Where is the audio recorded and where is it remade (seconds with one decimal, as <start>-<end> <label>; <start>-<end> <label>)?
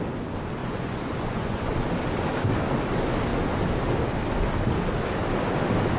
0.0-0.6 recorded; 0.6-1.7 remade; 1.7-6.0 recorded